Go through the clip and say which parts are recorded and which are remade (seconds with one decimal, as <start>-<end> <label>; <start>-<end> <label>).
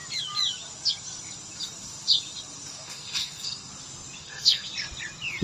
0.0-2.7 recorded; 2.7-3.7 remade; 3.7-4.2 recorded; 4.2-4.7 remade; 4.7-5.4 recorded